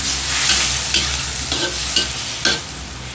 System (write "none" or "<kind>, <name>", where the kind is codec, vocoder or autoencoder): none